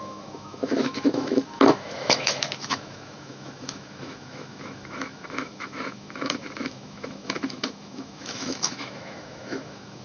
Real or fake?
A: fake